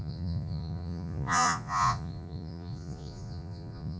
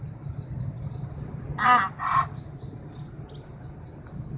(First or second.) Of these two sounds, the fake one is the first